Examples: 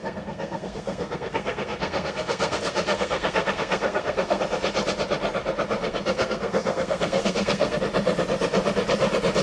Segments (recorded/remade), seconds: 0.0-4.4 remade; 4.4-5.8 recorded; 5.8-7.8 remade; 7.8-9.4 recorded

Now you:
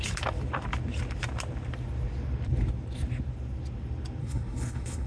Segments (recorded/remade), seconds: 0.0-4.2 recorded; 4.2-5.1 remade

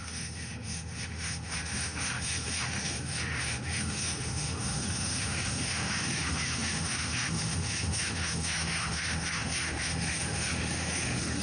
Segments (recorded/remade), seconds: 0.0-11.4 remade

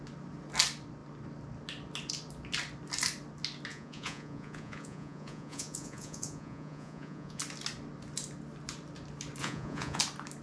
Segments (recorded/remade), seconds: 0.0-3.7 recorded; 3.7-7.4 remade; 7.4-9.4 recorded; 9.4-10.0 remade; 10.0-10.4 recorded

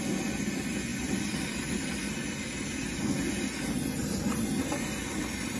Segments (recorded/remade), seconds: 0.0-5.6 recorded

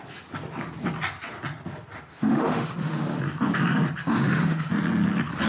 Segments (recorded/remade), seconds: 0.0-2.1 recorded; 2.1-3.2 remade; 3.2-4.0 recorded; 4.0-4.7 remade; 4.7-5.5 recorded

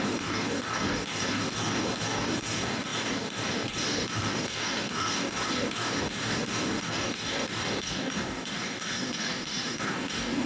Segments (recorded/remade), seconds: 0.0-10.5 remade